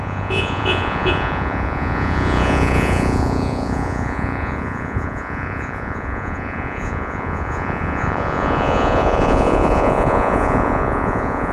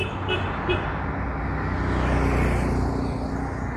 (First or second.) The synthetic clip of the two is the first